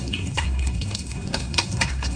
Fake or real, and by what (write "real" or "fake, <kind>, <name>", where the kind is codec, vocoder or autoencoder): fake, codec, SNAC